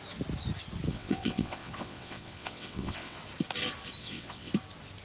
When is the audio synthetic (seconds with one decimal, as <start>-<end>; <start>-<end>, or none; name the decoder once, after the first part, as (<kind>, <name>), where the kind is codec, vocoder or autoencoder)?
0.9-3.2 (vocoder, WaveNeXt); 4.0-4.5